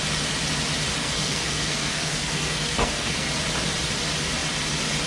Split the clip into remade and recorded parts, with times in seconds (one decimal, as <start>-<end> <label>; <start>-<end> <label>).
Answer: 0.0-1.0 recorded; 1.0-3.3 remade; 3.3-5.1 recorded